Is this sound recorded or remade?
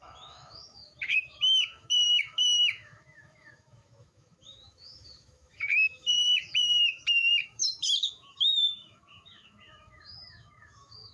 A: remade